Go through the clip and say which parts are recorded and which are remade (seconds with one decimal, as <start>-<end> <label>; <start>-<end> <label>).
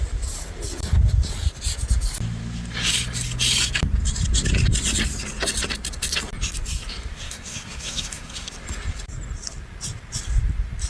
0.0-7.1 recorded; 7.1-8.5 remade; 8.5-10.9 recorded